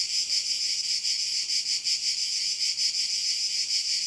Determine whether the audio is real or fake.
real